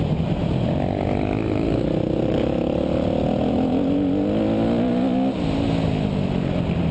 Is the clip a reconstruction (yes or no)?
no